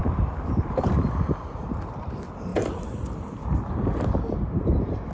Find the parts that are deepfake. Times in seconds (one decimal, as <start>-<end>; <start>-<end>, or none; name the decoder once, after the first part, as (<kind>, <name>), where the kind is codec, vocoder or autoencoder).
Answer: 0.0-1.6 (vocoder, BigVGAN v2)